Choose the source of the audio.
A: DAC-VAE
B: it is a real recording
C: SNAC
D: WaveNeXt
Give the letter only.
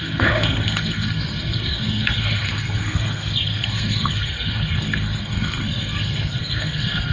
C